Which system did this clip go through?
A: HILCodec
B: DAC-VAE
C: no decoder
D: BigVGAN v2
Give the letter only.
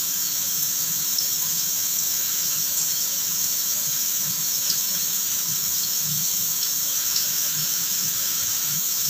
B